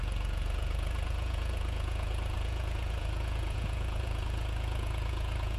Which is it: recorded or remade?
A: remade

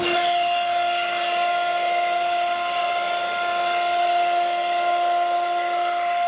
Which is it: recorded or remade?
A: recorded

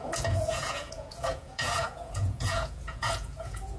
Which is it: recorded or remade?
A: remade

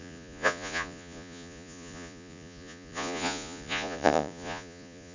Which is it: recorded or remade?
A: remade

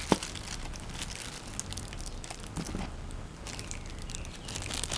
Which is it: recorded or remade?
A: recorded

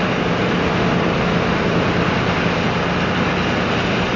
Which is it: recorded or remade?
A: recorded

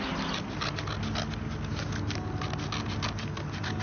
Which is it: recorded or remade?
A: recorded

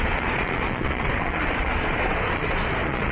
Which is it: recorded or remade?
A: remade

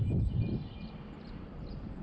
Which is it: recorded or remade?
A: recorded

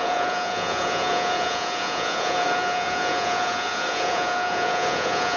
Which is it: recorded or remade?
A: remade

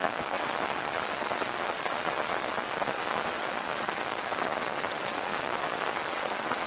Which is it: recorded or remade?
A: remade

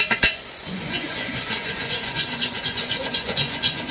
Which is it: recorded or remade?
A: remade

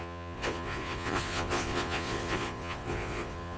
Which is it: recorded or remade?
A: remade